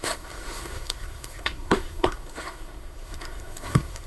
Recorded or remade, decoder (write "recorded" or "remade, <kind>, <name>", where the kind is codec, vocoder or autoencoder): remade, codec, SNAC